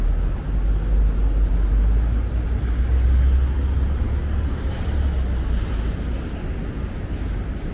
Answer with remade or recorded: recorded